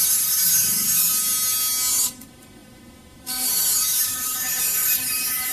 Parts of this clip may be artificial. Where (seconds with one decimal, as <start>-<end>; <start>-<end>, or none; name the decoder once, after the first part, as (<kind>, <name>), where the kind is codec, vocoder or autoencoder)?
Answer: 0.0-1.1 (autoencoder, DAC-VAE); 1.9-5.5